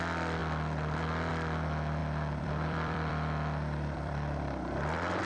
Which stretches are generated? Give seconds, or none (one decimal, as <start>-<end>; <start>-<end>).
2.0-5.3